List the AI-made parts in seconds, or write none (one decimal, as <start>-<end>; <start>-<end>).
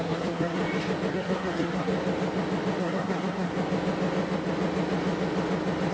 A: 0.0-0.6; 1.1-1.9; 2.8-3.5